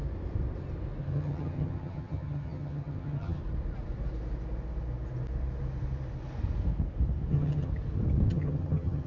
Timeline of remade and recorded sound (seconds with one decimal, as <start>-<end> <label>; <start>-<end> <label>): 0.0-1.0 recorded; 1.0-3.4 remade; 3.4-7.3 recorded; 7.3-7.7 remade; 7.7-8.3 recorded; 8.3-9.1 remade